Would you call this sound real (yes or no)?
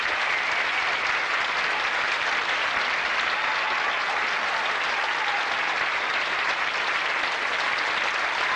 yes